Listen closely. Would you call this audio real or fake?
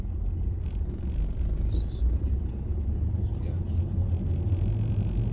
real